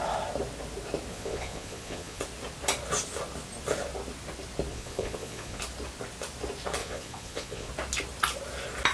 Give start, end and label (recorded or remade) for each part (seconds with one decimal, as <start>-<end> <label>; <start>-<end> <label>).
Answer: 0.0-1.1 recorded; 1.1-2.2 remade; 2.2-4.7 recorded; 4.7-5.6 remade; 5.6-6.8 recorded; 6.8-7.7 remade; 7.7-8.9 recorded